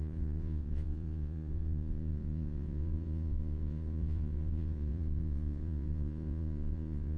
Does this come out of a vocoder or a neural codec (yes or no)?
yes